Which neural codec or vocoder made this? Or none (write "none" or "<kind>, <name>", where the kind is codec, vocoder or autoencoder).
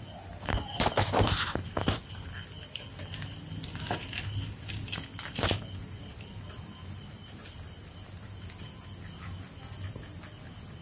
none